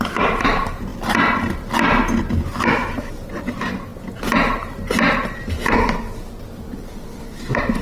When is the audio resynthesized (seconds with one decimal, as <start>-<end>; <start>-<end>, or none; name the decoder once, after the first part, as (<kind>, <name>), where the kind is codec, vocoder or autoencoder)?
0.0-0.9 (vocoder, BigVGAN v2); 2.6-3.9; 5.3-7.8